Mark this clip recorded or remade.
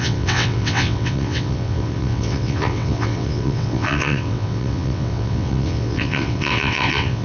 remade